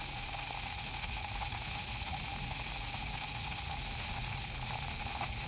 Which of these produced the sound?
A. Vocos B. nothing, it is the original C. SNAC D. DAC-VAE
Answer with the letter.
A